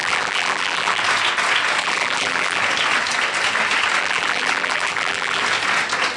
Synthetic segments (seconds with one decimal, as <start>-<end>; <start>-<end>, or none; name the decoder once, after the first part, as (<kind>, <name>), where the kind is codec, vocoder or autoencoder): 0.0-1.0 (vocoder, BigVGAN v2); 1.8-2.6; 4.0-5.4